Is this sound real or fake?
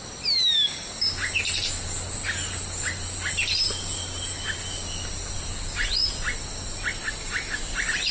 real